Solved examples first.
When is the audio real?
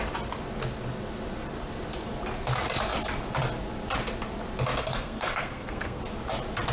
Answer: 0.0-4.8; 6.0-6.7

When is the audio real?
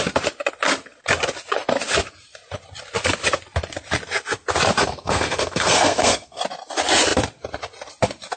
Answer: 0.0-4.8; 6.4-8.4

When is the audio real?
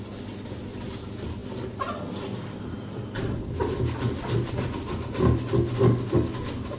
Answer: 0.0-6.8